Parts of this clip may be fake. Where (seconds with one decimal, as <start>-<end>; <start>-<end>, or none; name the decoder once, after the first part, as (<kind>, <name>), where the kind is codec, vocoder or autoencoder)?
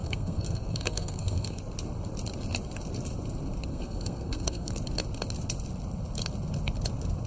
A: 0.0-1.6 (codec, SNAC); 3.7-4.7